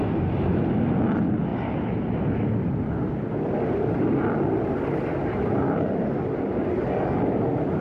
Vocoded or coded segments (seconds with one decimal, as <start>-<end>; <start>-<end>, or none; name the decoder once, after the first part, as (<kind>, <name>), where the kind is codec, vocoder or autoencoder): none